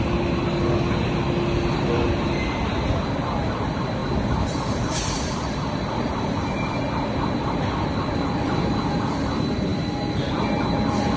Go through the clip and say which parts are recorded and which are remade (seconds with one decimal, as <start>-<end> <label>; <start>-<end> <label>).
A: 0.0-11.2 recorded